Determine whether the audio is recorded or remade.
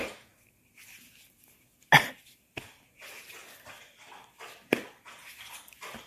recorded